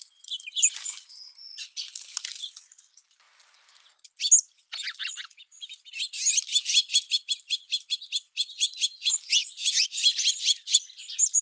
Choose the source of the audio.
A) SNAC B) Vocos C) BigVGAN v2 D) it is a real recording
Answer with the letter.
D